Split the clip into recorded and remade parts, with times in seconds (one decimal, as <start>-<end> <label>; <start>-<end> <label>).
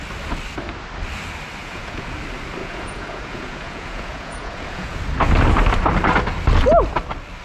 0.0-1.6 recorded; 1.6-2.2 remade; 2.2-2.6 recorded; 2.6-5.0 remade; 5.0-7.4 recorded